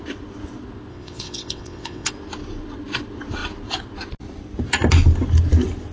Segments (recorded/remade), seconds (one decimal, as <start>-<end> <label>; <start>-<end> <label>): 0.0-0.9 recorded; 0.9-2.1 remade; 2.1-5.9 recorded